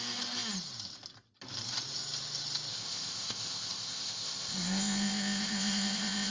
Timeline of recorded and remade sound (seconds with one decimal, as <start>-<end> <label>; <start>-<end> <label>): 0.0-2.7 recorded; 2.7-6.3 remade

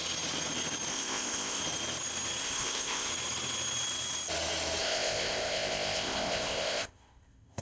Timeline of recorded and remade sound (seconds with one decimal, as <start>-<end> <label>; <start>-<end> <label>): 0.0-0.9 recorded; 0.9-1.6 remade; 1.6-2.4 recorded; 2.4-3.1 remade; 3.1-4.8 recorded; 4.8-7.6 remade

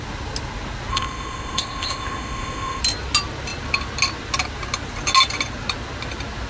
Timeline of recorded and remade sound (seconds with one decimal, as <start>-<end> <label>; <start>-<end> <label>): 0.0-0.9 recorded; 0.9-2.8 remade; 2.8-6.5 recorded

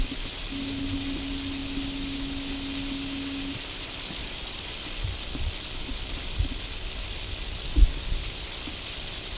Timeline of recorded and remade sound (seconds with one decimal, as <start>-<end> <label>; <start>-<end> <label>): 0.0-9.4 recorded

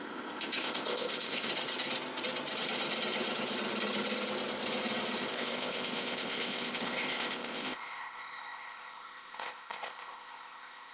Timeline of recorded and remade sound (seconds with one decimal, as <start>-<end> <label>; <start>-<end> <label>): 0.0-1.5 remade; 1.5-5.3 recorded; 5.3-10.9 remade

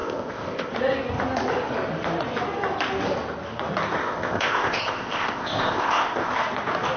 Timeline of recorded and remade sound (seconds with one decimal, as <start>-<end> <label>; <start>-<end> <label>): 0.0-0.7 remade; 0.7-4.0 recorded; 4.0-6.3 remade; 6.3-7.0 recorded

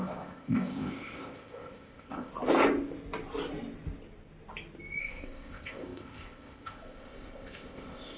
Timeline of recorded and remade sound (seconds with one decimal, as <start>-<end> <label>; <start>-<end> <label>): 0.0-2.3 remade; 2.3-5.0 recorded; 5.0-8.2 remade